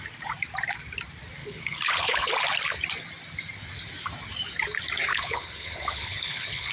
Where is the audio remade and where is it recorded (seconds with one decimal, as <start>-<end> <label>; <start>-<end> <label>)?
0.0-1.4 recorded; 1.4-2.3 remade; 2.3-5.1 recorded; 5.1-6.7 remade